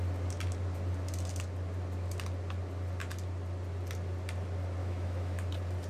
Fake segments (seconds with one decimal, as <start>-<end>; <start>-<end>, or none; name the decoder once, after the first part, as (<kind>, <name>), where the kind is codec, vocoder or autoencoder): 4.8-5.5 (autoencoder, DAC-VAE)